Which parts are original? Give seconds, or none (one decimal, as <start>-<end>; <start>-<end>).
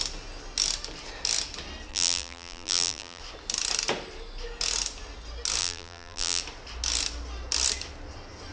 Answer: 0.0-1.9; 3.2-5.6; 6.4-8.5